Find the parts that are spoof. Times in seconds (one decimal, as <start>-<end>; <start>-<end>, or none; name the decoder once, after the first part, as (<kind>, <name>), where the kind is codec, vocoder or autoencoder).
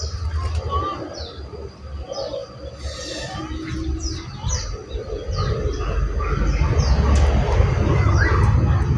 none